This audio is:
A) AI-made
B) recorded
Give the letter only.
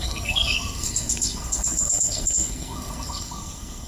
A